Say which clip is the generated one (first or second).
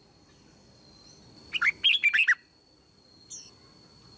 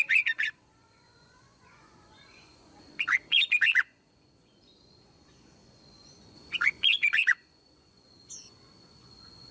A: second